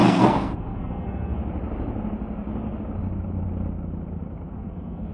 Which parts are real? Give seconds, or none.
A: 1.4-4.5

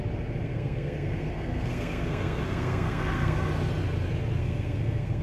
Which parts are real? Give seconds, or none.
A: 0.0-0.4; 3.5-4.4

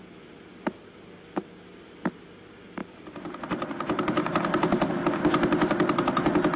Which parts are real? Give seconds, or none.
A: 0.0-2.8; 4.9-6.6

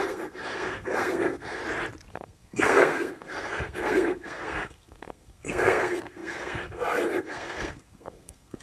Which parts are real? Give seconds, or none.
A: 1.6-2.1

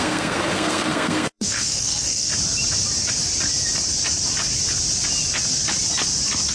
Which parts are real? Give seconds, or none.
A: 2.3-6.5